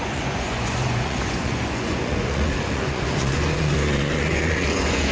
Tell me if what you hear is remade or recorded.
remade